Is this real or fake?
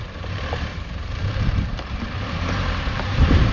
fake